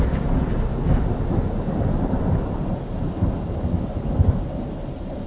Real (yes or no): yes